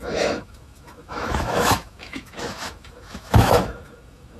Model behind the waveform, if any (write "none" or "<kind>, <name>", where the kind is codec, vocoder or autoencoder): autoencoder, DAC-VAE